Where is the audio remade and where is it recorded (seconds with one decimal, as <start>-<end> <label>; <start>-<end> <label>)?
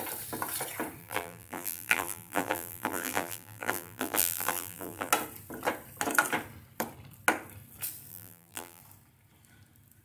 0.0-1.0 recorded; 1.0-5.1 remade; 5.1-8.1 recorded; 8.1-8.8 remade; 8.8-10.0 recorded